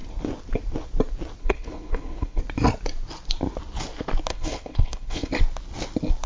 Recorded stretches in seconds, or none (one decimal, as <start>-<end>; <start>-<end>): 0.0-1.4; 2.4-4.3; 5.3-6.3